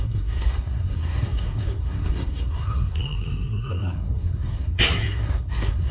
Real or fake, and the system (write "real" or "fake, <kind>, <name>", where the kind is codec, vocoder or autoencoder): fake, codec, SNAC